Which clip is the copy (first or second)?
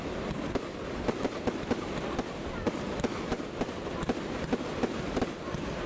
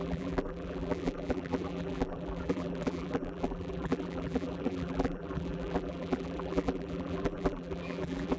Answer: second